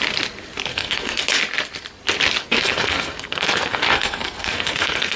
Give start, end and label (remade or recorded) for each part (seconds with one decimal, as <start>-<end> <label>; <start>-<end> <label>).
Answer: 0.0-0.7 recorded; 0.7-1.2 remade; 1.2-2.4 recorded; 2.4-5.2 remade